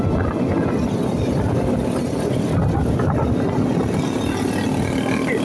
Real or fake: real